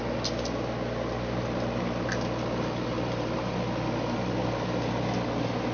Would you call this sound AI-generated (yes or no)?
no